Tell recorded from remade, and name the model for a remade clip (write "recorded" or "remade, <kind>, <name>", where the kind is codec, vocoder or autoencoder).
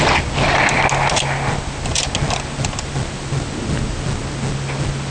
recorded